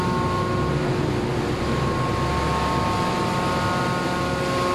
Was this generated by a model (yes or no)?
no